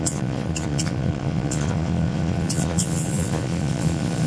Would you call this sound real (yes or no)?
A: no